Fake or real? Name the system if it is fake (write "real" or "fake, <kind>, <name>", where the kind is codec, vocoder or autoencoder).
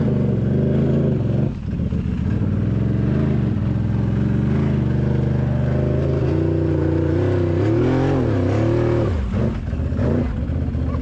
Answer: real